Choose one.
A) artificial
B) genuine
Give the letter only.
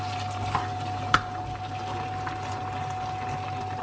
B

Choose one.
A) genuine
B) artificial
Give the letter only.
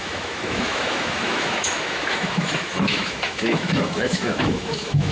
B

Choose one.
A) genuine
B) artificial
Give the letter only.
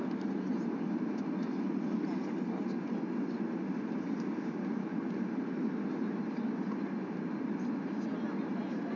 A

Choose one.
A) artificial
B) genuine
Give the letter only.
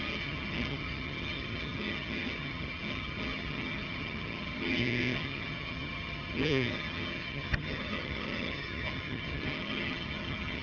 A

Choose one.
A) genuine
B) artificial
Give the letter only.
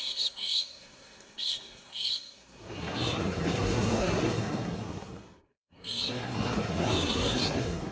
B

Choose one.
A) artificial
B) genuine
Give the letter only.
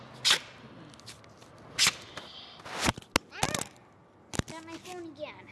B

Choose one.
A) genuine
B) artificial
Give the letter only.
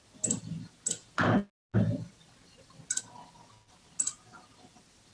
A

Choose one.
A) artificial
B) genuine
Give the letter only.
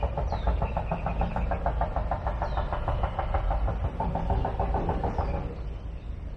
B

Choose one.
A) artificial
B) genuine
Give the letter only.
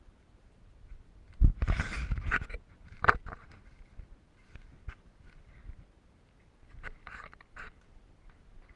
B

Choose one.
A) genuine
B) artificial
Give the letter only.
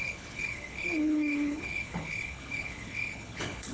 B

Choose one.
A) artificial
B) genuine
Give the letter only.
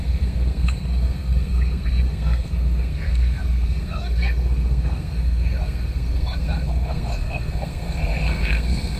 A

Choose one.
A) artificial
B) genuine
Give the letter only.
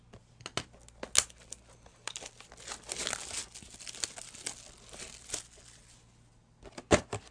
B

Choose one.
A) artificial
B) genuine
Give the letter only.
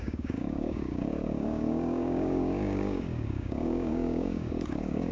A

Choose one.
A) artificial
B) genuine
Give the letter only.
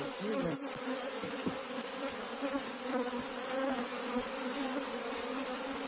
A